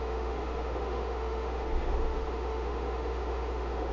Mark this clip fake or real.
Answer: fake